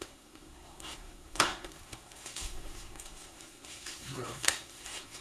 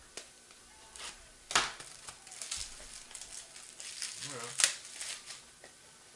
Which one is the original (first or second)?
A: second